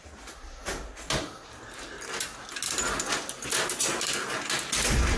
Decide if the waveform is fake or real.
real